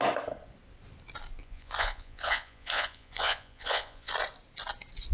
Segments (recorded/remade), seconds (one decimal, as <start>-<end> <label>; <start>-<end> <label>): 0.0-1.4 recorded; 1.4-4.1 remade; 4.1-5.1 recorded